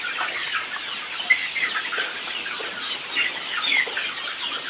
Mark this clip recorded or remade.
recorded